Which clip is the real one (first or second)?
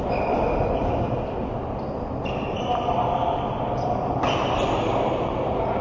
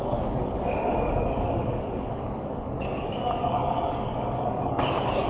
first